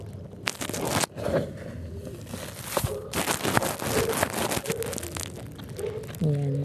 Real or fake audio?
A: real